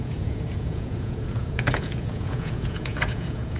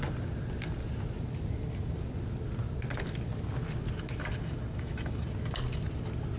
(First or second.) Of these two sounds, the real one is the second